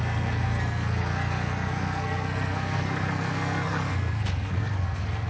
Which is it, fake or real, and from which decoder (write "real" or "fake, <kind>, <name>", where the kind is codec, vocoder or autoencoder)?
fake, codec, SNAC